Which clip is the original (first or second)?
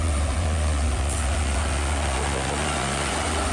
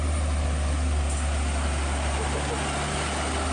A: second